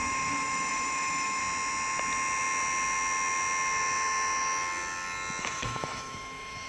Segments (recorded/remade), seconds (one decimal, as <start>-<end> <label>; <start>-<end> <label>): 0.0-1.4 remade; 1.4-5.4 recorded; 5.4-6.7 remade